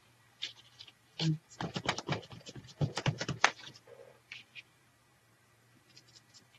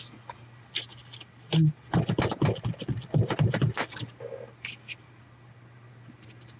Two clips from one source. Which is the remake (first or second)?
first